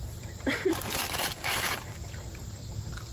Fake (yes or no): yes